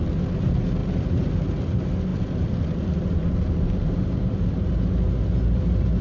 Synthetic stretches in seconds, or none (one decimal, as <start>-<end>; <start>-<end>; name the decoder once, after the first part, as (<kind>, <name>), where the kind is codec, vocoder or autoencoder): 0.8-1.3 (vocoder, BigVGAN v2); 2.1-4.4

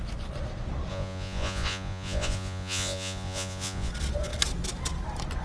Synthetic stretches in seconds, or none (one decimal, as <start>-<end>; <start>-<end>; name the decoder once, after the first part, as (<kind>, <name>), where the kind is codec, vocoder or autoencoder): 0.9-3.9 (vocoder, Vocos)

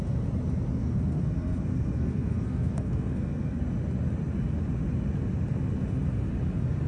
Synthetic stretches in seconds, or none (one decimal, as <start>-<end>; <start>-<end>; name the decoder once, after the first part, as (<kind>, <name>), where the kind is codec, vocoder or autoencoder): 0.8-3.6 (codec, SNAC)

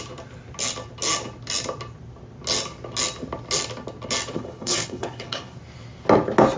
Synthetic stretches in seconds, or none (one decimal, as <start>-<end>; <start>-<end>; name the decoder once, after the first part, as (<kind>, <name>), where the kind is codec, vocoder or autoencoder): 4.3-5.6 (codec, HILCodec)